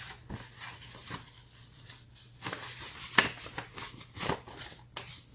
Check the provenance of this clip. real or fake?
real